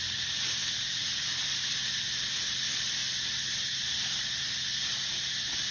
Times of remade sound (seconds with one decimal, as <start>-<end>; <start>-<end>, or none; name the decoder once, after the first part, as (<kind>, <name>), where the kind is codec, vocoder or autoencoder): 0.6-1.5 (vocoder, BigVGAN v2)